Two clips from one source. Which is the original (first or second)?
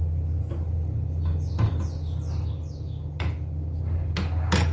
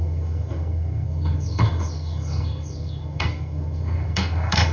first